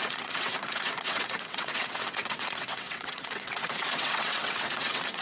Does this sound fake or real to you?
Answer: fake